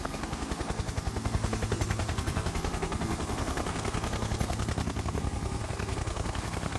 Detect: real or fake fake